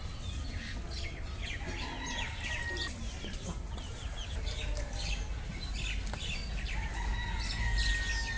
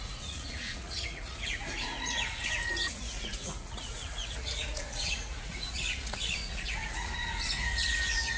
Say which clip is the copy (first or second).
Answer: second